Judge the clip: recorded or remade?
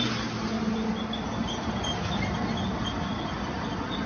recorded